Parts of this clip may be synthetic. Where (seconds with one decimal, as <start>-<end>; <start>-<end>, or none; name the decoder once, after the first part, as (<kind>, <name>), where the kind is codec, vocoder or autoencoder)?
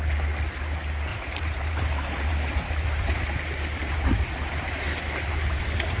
1.1-2.3 (vocoder, BigVGAN v2); 3.8-4.5